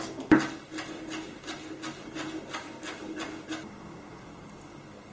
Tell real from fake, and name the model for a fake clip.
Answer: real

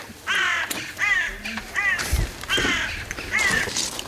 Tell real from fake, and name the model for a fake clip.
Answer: real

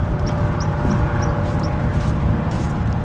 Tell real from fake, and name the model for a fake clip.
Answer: fake, vocoder, BigVGAN v2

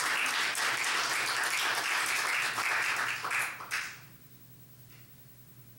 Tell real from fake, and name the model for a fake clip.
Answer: real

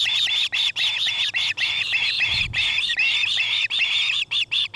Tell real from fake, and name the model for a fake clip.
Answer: fake, vocoder, BigVGAN v2